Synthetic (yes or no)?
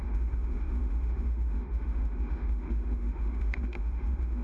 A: yes